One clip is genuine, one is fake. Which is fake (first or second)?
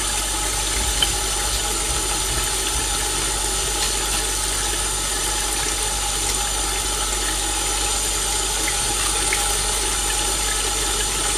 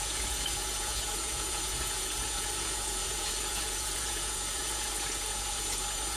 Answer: second